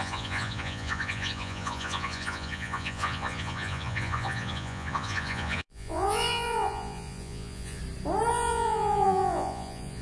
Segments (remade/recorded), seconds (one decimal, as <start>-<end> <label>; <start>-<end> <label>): 0.0-7.8 remade; 7.8-8.3 recorded; 8.3-10.0 remade